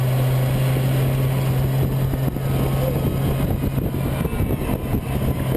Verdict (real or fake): real